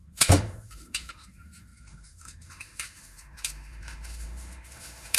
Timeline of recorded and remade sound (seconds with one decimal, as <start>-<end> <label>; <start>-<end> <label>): 0.0-5.2 remade